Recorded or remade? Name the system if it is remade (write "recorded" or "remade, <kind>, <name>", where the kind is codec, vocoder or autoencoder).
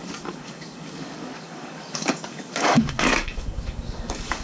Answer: remade, codec, DAC